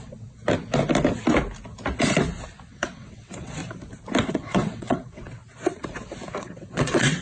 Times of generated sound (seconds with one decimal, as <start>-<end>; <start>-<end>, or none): 0.0-0.4; 2.7-3.6; 4.2-5.4; 6.4-7.2